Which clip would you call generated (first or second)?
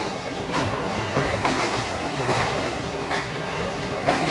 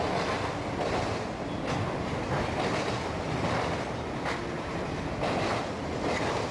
first